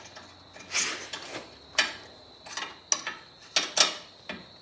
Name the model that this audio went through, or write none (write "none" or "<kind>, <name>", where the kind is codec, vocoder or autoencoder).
none